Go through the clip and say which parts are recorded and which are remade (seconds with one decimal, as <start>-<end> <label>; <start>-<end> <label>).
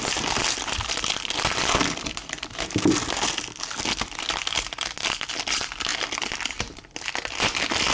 0.0-7.9 recorded